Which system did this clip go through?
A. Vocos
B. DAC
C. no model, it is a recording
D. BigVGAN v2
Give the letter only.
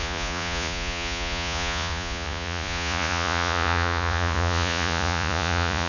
A